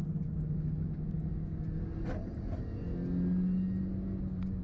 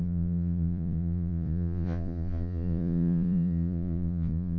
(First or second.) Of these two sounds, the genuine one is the first